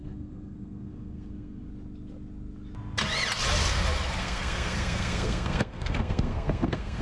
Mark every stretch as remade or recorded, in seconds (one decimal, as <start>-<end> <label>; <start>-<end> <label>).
0.0-1.7 remade; 1.7-4.2 recorded; 4.2-7.0 remade